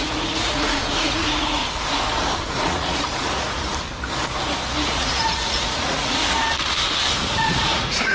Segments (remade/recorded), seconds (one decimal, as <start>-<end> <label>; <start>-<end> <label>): 0.0-1.6 remade; 1.6-2.4 recorded; 2.4-3.7 remade; 3.7-4.9 recorded; 4.9-6.2 remade; 6.2-7.1 recorded; 7.1-8.1 remade